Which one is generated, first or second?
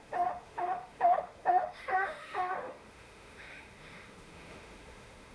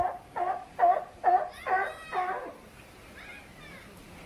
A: first